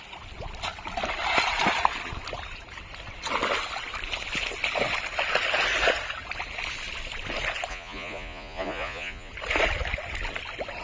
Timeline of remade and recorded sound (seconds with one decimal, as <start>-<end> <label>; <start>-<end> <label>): 0.0-7.7 recorded; 7.7-9.3 remade; 9.3-10.8 recorded